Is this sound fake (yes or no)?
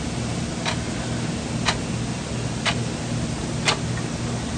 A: no